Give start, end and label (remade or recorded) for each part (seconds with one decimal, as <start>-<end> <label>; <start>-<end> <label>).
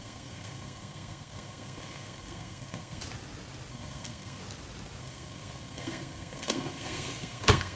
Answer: 0.0-3.0 remade; 3.0-3.7 recorded; 3.7-4.4 remade; 4.4-5.0 recorded; 5.0-7.8 remade